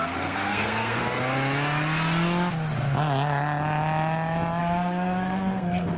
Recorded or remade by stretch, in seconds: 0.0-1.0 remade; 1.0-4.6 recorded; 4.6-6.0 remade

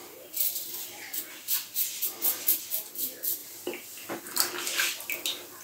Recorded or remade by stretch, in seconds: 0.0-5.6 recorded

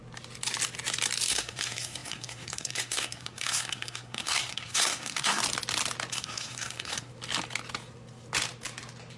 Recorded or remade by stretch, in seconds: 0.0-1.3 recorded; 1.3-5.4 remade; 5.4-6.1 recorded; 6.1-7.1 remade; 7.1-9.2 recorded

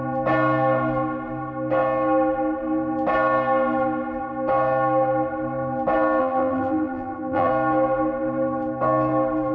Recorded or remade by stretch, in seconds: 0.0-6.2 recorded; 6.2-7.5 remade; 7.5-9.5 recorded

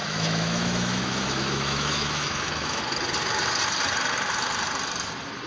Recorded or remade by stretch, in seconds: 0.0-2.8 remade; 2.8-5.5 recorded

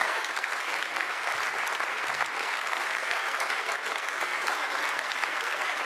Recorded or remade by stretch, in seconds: 0.0-1.3 remade; 1.3-1.9 recorded; 1.9-5.8 remade

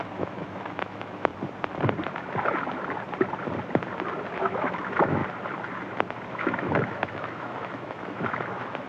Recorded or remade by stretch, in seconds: 0.0-1.3 remade; 1.3-4.3 recorded; 4.3-5.2 remade; 5.2-6.3 recorded; 6.3-8.9 remade